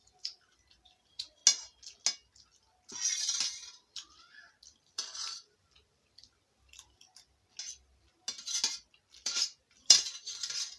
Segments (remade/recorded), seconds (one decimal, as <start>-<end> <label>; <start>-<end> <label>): 0.0-1.4 remade; 1.4-4.8 recorded; 4.8-7.1 remade; 7.1-9.1 recorded; 9.1-10.8 remade

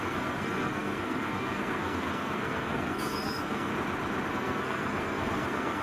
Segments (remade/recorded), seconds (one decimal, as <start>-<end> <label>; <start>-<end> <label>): 0.0-3.7 remade; 3.7-4.3 recorded; 4.3-5.8 remade